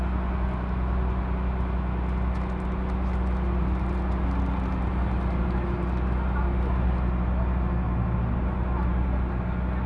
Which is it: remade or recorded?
recorded